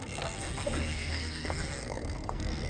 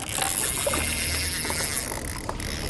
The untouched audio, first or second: second